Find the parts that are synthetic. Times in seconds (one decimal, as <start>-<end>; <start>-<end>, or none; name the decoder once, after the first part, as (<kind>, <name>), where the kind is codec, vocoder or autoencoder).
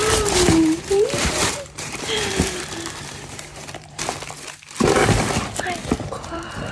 0.0-4.0 (vocoder, BigVGAN v2); 5.8-6.7